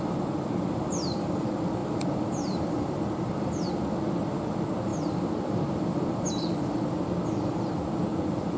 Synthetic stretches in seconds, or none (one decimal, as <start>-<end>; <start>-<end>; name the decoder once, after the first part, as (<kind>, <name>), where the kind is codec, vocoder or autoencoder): 1.8-3.7 (vocoder, BigVGAN v2); 4.9-6.9; 8.1-8.6